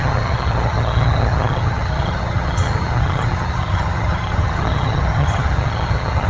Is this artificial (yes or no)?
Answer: yes